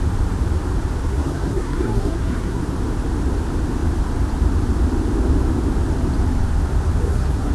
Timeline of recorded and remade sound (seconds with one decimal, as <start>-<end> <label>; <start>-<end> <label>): 0.0-1.0 recorded; 1.0-2.6 remade; 2.6-7.0 recorded; 7.0-7.5 remade